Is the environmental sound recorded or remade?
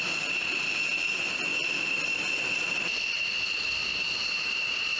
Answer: recorded